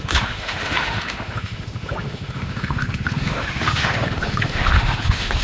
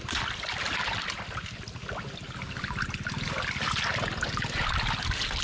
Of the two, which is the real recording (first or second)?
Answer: second